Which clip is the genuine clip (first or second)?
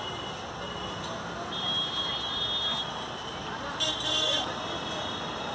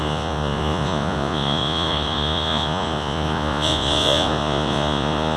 first